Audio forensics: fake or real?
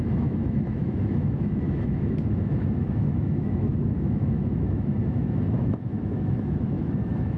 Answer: fake